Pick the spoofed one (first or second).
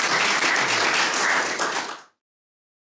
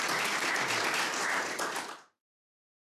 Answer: second